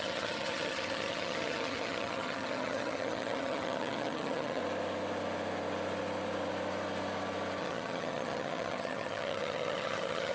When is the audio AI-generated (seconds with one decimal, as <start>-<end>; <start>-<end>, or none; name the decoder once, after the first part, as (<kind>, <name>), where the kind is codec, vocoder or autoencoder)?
0.0-4.6 (vocoder, HiFi-GAN); 7.6-10.3